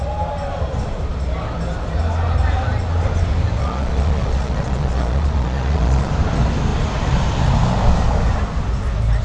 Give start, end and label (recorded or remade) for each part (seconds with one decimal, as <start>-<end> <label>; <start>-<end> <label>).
0.0-3.6 recorded; 3.6-6.1 remade; 6.1-9.2 recorded